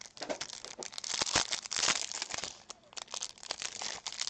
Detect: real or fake real